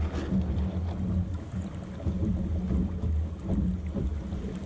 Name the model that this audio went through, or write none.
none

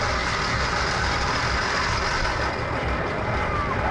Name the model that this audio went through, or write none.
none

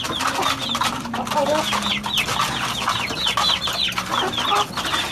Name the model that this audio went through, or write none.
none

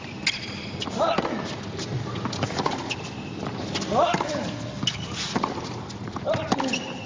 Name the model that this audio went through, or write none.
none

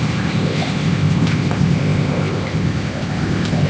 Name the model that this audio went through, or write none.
codec, ZipCodec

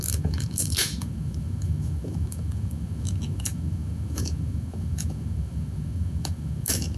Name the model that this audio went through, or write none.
autoencoder, DAC-VAE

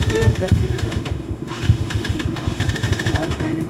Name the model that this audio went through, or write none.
autoencoder, DAC-VAE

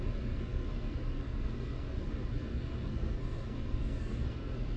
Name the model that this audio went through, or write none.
codec, SNAC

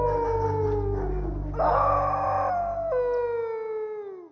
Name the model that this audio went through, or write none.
none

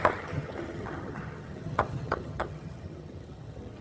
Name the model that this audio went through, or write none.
vocoder, HiFi-GAN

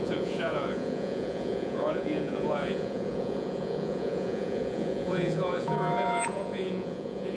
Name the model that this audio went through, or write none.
vocoder, Vocos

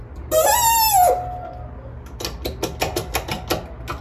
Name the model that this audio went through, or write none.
none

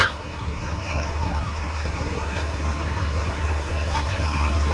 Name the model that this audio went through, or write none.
codec, SNAC